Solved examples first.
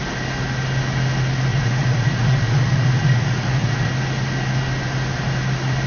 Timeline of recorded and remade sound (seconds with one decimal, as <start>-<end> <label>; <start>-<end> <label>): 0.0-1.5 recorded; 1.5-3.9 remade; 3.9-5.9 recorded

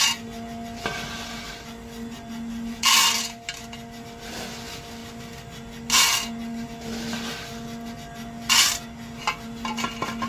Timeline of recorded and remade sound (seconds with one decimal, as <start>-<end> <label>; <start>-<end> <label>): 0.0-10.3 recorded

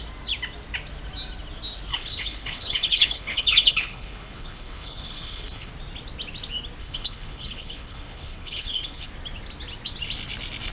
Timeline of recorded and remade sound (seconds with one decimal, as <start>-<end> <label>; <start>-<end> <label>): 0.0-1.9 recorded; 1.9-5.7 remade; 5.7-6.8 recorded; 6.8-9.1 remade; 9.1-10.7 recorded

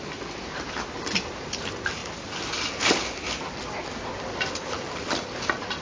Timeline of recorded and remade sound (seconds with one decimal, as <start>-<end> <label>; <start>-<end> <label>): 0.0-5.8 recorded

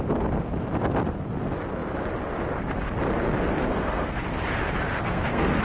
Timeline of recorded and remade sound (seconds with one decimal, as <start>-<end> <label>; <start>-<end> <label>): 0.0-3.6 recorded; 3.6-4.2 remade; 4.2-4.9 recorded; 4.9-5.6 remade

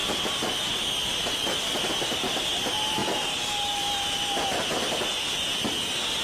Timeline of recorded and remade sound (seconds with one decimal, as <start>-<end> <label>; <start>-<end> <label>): 0.0-6.2 recorded